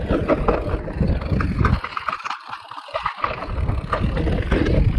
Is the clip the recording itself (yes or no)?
yes